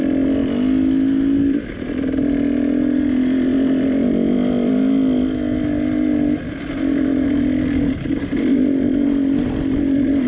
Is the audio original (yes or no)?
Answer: yes